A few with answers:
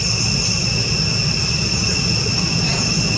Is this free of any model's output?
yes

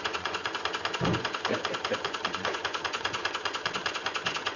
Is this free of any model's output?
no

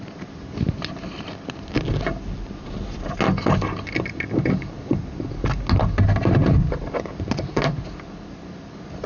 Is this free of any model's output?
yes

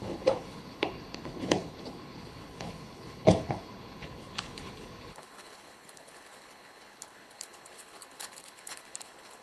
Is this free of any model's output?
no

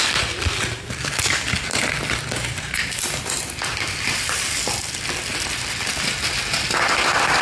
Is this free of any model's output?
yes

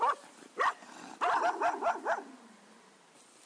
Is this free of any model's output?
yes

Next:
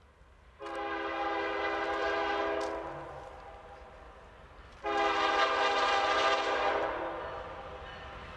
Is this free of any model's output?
yes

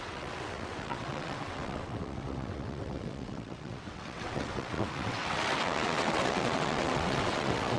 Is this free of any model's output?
no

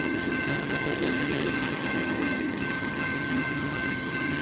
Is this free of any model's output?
no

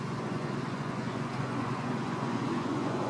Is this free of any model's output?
no